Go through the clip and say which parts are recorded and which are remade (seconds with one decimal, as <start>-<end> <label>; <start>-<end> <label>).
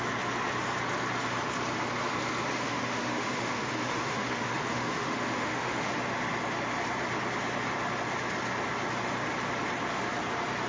0.0-2.5 recorded; 2.5-5.9 remade; 5.9-10.7 recorded